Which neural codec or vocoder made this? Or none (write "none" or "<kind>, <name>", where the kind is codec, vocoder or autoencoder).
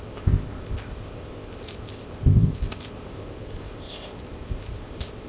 codec, ZipCodec